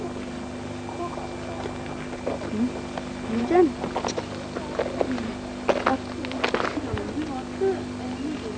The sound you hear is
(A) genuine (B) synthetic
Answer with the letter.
A